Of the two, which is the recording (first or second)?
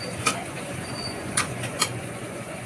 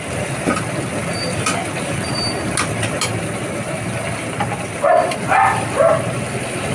second